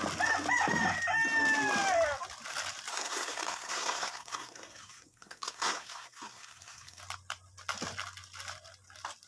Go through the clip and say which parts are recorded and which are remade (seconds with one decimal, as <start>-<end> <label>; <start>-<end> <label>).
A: 0.0-2.9 recorded; 2.9-7.0 remade; 7.0-9.3 recorded